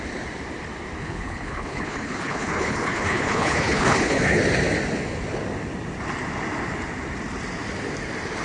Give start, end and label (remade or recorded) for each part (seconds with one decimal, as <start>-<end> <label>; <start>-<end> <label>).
0.0-1.0 recorded; 1.0-4.4 remade; 4.4-8.4 recorded